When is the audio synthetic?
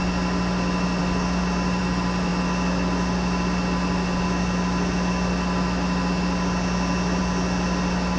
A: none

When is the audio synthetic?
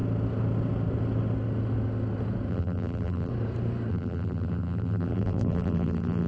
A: 2.5-3.3 (vocoder, BigVGAN v2); 3.9-6.3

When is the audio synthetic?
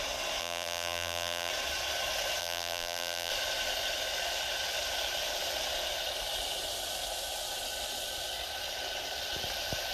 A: 0.4-1.5 (vocoder, BigVGAN v2); 2.4-3.3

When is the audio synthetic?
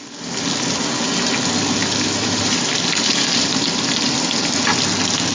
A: 1.8-4.5 (vocoder, BigVGAN v2)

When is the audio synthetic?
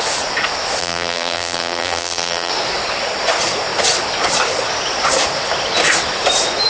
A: 0.8-2.5 (vocoder, BigVGAN v2)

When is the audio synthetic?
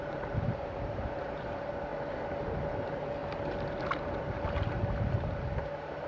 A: 0.0-1.9 (vocoder, BigVGAN v2); 2.8-3.2